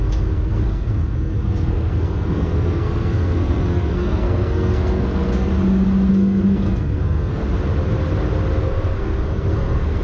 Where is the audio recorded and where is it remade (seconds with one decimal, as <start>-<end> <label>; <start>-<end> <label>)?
0.0-5.5 remade; 5.5-6.1 recorded; 6.1-7.4 remade; 7.4-8.6 recorded; 8.6-10.0 remade